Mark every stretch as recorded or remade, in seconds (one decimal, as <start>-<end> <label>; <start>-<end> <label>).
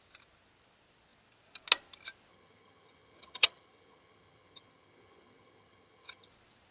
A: 0.0-2.3 recorded; 2.3-6.3 remade; 6.3-6.7 recorded